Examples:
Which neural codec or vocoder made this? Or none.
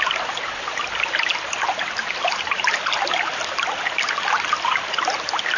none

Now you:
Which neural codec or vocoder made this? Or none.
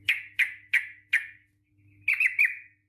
none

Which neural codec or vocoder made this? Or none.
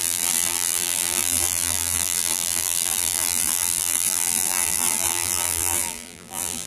vocoder, BigVGAN v2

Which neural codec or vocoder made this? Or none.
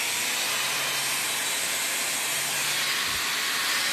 none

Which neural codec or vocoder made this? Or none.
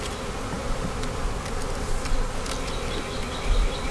none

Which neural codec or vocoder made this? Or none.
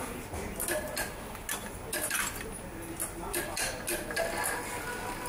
none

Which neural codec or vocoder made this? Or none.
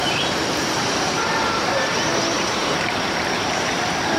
vocoder, BigVGAN v2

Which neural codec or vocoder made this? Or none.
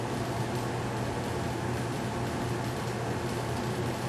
none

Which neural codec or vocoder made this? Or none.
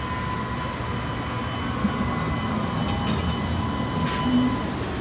none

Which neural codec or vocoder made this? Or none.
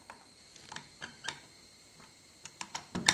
vocoder, BigVGAN v2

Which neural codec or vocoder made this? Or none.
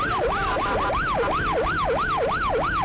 vocoder, BigVGAN v2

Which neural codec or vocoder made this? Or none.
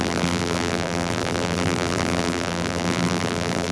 vocoder, BigVGAN v2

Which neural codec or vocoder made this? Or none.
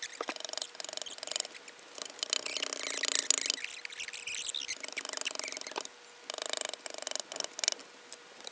none